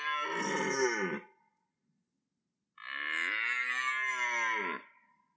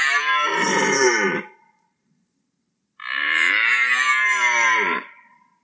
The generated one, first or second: second